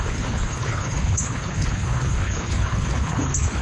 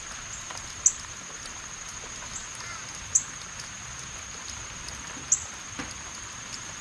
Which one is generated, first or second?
first